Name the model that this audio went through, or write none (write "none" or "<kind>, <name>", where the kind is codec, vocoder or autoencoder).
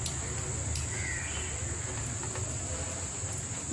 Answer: none